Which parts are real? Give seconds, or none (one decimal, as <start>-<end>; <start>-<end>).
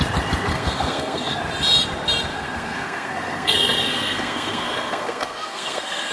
0.0-0.5; 1.4-2.3